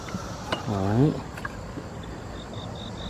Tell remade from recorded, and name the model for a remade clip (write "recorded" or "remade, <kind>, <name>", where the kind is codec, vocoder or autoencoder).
recorded